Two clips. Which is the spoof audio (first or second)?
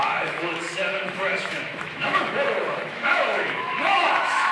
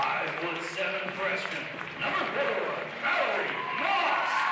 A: first